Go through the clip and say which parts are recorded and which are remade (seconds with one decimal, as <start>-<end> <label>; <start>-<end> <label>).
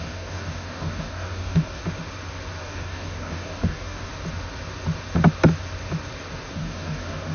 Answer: 0.0-1.8 remade; 1.8-2.6 recorded; 2.6-4.1 remade; 4.1-6.5 recorded; 6.5-7.3 remade